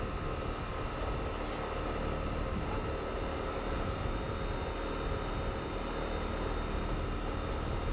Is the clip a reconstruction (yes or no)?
no